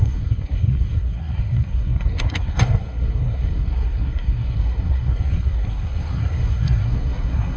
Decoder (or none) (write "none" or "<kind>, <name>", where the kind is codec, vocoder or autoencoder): codec, SNAC